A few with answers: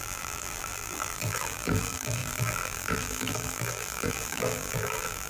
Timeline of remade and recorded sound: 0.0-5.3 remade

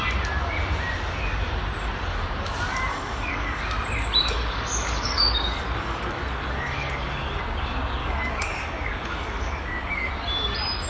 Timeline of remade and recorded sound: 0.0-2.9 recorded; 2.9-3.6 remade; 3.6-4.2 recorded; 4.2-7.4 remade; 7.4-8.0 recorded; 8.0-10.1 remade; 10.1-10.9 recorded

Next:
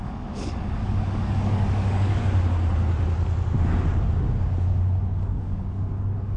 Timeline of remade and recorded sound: 0.0-2.2 remade; 2.2-5.3 recorded; 5.3-6.4 remade